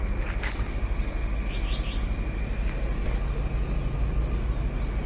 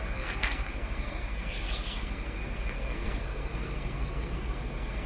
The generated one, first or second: second